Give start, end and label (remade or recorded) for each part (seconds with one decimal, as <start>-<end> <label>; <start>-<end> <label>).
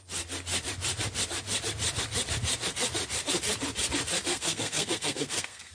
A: 0.0-4.3 recorded; 4.3-5.7 remade